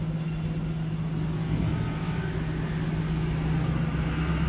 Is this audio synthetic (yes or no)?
no